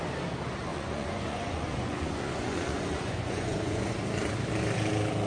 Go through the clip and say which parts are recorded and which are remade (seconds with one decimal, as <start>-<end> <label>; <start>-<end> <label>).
0.0-0.7 recorded; 0.7-3.9 remade; 3.9-5.3 recorded